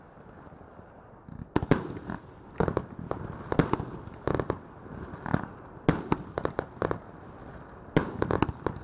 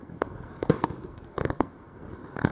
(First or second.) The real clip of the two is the first